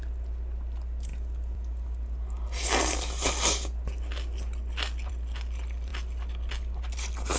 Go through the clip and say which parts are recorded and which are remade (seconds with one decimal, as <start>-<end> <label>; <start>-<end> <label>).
0.0-7.4 recorded

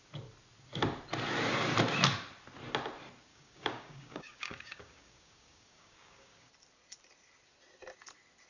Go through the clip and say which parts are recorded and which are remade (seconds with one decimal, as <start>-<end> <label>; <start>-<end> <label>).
0.0-3.3 recorded; 3.3-6.5 remade; 6.5-8.5 recorded

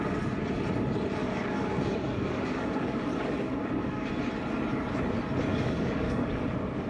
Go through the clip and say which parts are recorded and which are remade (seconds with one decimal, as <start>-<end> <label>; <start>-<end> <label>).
0.0-1.2 recorded; 1.2-4.1 remade; 4.1-5.5 recorded; 5.5-6.4 remade; 6.4-6.9 recorded

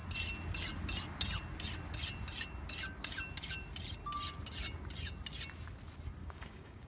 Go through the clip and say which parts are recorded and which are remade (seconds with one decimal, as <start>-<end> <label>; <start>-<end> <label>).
0.0-6.2 recorded; 6.2-6.9 remade

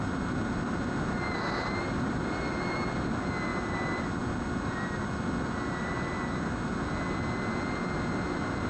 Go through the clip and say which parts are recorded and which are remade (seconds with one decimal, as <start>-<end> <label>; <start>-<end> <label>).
0.0-8.7 recorded

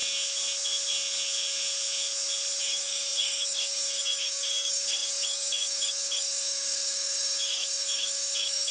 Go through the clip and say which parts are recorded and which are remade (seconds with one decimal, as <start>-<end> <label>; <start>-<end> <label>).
0.0-2.6 recorded; 2.6-8.7 remade